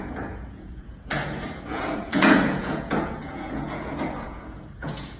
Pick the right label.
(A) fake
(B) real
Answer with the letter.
A